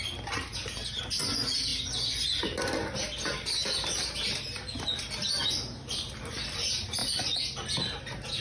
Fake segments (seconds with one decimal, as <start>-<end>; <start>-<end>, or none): none

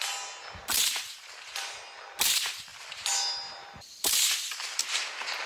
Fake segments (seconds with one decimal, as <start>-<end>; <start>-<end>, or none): 0.7-1.8; 2.7-4.8

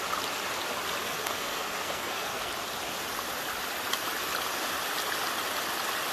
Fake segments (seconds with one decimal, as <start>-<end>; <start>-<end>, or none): 1.0-2.5

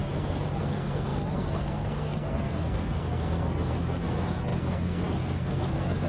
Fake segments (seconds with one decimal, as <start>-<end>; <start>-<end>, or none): 0.0-6.1

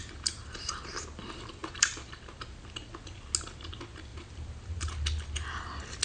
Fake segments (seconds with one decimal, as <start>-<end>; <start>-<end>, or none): 0.0-0.7; 1.6-2.2; 4.1-4.9

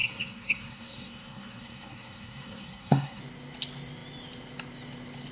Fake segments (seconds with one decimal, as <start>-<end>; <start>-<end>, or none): 0.0-3.2

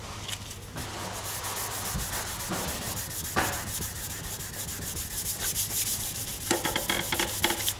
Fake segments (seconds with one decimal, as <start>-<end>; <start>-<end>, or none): none